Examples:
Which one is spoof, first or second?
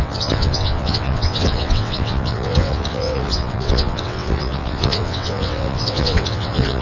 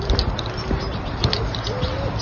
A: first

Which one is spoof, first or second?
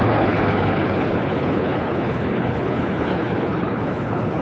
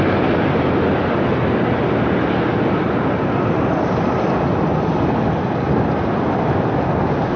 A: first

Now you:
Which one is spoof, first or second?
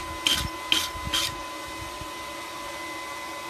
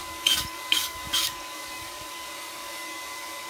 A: second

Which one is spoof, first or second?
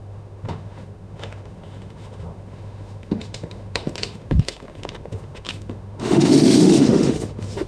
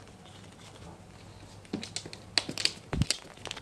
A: first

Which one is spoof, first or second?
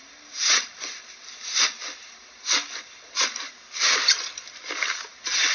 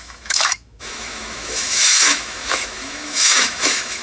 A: second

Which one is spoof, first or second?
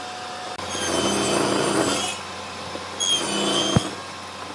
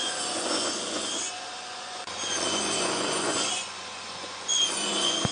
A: second